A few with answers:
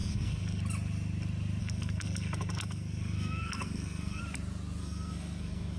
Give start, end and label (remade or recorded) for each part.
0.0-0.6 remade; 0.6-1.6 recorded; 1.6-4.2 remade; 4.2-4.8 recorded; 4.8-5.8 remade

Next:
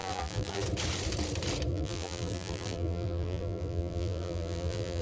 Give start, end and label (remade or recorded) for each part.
0.0-0.6 remade; 0.6-1.7 recorded; 1.7-5.0 remade

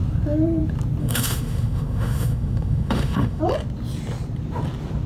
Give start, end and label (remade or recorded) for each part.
0.0-1.0 recorded; 1.0-3.4 remade; 3.4-5.1 recorded

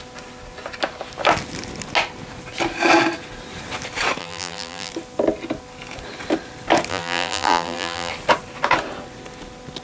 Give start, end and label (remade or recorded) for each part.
0.0-4.2 recorded; 4.2-4.9 remade; 4.9-6.9 recorded; 6.9-8.1 remade; 8.1-9.8 recorded

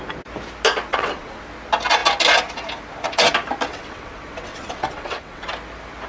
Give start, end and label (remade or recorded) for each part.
0.0-0.9 recorded; 0.9-1.4 remade; 1.4-3.7 recorded; 3.7-5.5 remade; 5.5-6.1 recorded

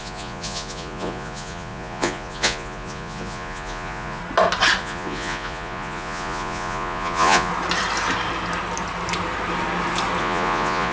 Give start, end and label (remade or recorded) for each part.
0.0-4.2 remade; 4.2-4.8 recorded; 4.8-7.5 remade; 7.5-10.2 recorded; 10.2-10.9 remade